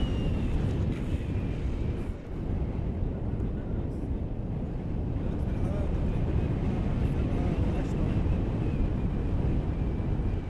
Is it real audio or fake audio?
real